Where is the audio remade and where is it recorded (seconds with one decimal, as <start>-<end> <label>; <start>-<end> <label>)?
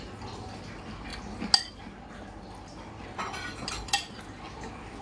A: 0.0-5.0 recorded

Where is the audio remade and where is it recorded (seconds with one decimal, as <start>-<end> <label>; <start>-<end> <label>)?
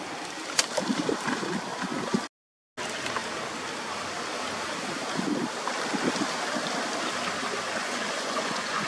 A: 0.0-7.8 recorded; 7.8-8.9 remade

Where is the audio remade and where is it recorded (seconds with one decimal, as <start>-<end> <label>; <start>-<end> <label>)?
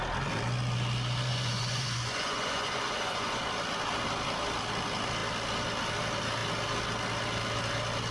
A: 0.0-1.3 recorded; 1.3-3.4 remade; 3.4-8.1 recorded